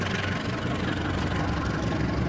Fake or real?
real